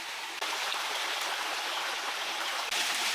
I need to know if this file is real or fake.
real